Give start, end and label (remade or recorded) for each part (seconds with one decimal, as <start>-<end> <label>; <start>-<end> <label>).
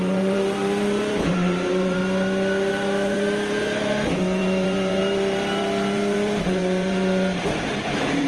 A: 0.0-2.0 remade; 2.0-2.7 recorded; 2.7-8.3 remade